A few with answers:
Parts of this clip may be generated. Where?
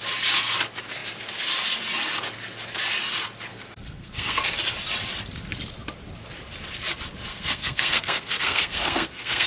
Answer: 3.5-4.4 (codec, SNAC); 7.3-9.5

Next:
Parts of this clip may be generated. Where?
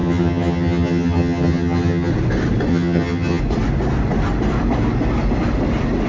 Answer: 0.0-2.1 (vocoder, HiFi-GAN); 2.7-3.4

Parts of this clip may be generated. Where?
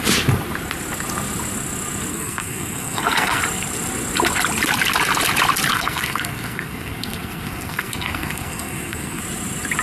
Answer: 2.1-3.4 (codec, SNAC); 5.7-9.2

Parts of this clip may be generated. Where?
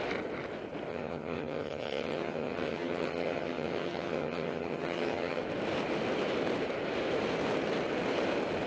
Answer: 0.9-5.4 (vocoder, HiFi-GAN)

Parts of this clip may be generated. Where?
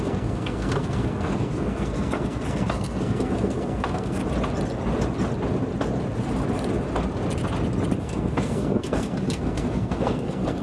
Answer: 0.0-4.2 (codec, SNAC); 8.0-10.6